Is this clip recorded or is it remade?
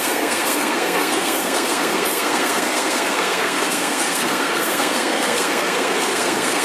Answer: remade